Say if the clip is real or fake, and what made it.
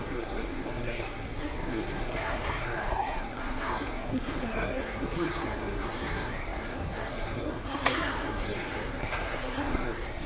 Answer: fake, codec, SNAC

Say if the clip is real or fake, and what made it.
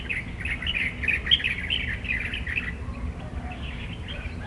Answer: real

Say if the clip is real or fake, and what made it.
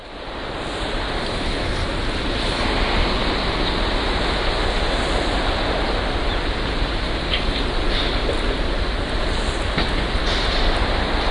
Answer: real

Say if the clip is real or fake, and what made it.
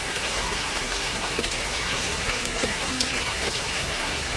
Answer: fake, codec, SNAC